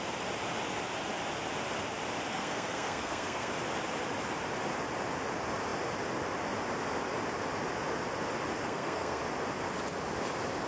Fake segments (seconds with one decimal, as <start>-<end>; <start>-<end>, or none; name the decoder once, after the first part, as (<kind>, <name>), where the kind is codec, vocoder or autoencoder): 2.3-3.5 (codec, SNAC); 8.6-9.2